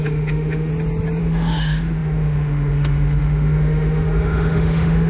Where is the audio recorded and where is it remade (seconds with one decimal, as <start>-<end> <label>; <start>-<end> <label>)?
0.0-0.7 remade; 0.7-1.2 recorded; 1.2-5.1 remade